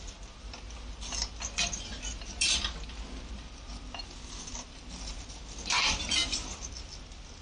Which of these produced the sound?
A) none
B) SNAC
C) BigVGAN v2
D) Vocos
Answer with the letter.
A